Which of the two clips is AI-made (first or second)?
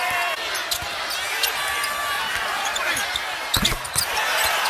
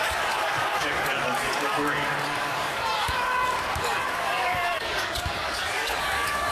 second